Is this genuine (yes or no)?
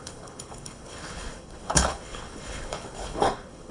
no